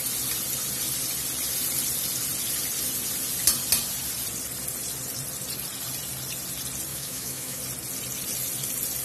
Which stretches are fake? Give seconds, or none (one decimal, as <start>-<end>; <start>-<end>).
6.9-7.6

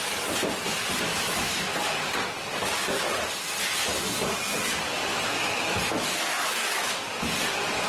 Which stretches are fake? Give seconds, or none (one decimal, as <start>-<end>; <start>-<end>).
1.1-1.8; 5.1-7.0

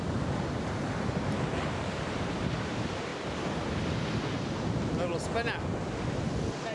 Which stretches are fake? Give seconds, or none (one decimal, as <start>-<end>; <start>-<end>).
0.0-3.1; 4.6-5.1

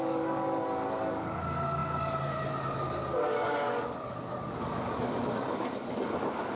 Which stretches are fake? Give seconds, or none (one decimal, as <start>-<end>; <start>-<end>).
0.0-6.6

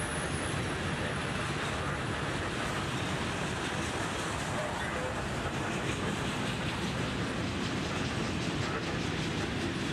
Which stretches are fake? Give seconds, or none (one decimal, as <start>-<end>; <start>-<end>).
none

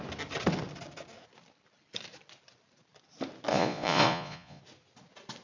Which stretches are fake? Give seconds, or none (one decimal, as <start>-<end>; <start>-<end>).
3.5-4.6

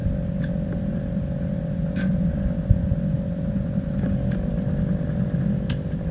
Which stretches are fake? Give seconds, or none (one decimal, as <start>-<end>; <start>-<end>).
none

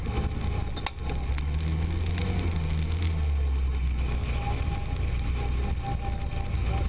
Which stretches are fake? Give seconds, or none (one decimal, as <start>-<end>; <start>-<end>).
none